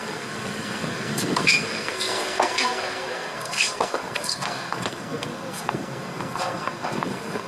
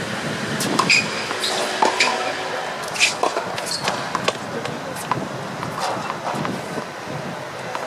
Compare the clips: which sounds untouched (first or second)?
second